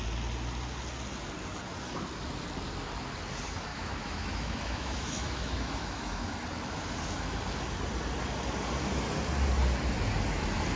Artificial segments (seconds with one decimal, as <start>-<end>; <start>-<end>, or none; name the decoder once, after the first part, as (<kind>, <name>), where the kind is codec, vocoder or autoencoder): 3.7-6.3 (autoencoder, DAC-VAE)